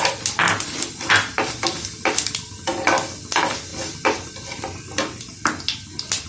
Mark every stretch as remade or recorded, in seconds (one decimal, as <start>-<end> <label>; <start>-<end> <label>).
0.0-3.7 recorded; 3.7-4.8 remade; 4.8-6.3 recorded